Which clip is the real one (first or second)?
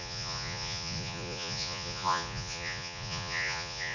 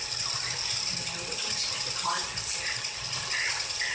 second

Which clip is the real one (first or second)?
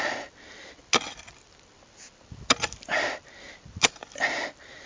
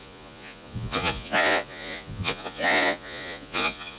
first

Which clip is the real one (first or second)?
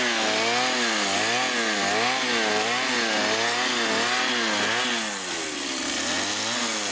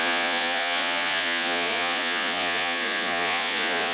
first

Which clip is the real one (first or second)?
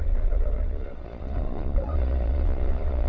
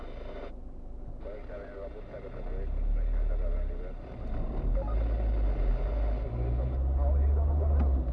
second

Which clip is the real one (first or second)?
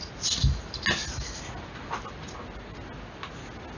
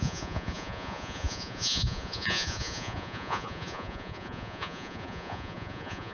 first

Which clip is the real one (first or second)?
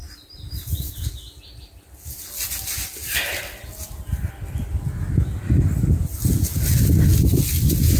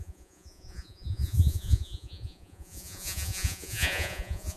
first